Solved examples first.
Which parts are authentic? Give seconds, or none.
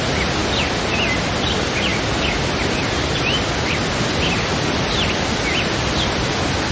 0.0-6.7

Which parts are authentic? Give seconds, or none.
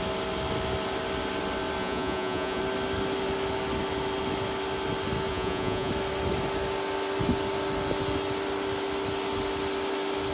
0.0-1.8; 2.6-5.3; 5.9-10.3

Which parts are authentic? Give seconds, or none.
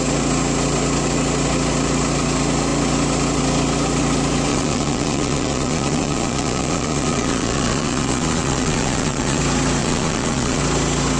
0.0-4.5; 9.4-9.8; 10.6-11.2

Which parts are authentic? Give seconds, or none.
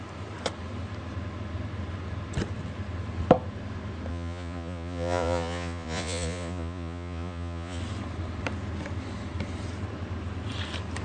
0.0-4.1; 7.8-11.0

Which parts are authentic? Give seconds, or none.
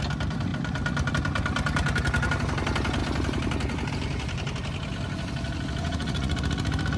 0.0-5.8; 6.4-7.0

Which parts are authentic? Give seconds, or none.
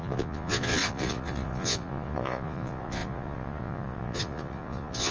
none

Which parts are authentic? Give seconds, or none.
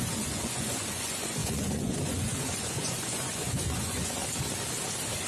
4.2-5.3